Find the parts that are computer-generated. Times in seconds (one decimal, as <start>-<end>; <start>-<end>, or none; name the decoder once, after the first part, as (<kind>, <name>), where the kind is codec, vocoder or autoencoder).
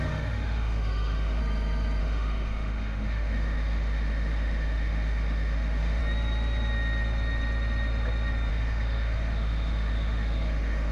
0.0-1.4 (autoencoder, DAC-VAE); 2.0-6.0; 8.5-10.9